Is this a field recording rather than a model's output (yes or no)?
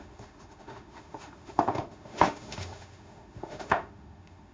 no